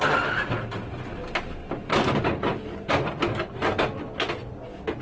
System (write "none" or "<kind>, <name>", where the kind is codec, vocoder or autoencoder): none